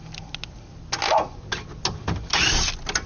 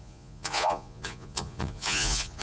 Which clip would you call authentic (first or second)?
first